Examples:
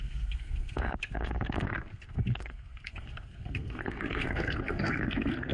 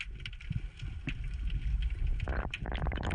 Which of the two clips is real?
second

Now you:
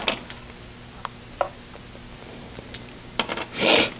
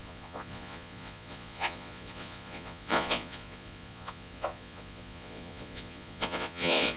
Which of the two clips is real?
first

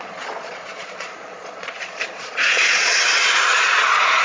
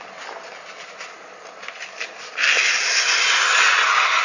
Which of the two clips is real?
second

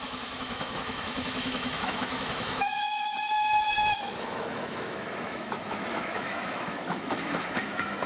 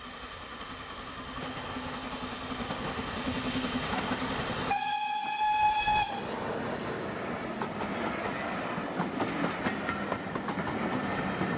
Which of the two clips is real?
second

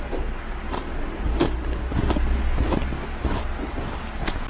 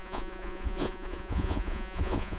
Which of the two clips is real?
first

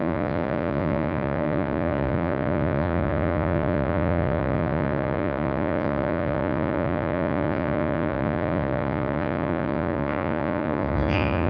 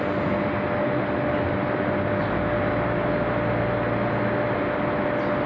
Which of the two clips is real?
second